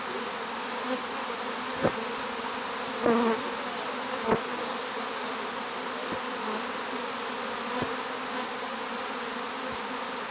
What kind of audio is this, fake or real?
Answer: real